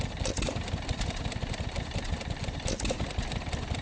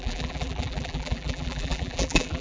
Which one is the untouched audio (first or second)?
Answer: first